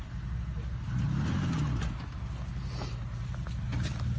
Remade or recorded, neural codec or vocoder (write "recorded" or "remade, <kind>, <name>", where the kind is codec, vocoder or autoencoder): recorded